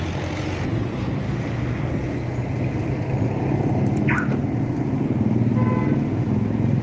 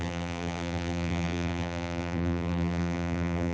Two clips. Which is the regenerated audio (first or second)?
second